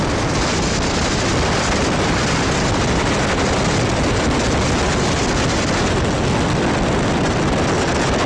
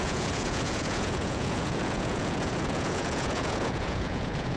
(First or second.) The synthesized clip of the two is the second